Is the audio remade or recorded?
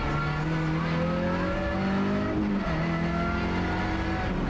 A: recorded